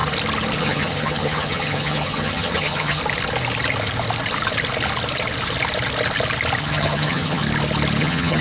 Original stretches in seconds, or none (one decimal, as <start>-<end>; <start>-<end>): 0.0-0.6; 3.0-6.6; 7.4-8.0